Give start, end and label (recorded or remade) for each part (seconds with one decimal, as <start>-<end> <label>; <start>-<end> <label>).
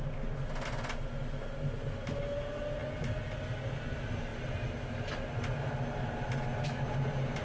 0.0-7.4 recorded